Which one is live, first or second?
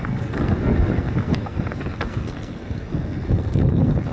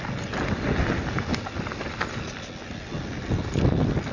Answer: second